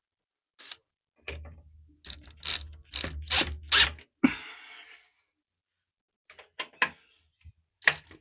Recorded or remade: recorded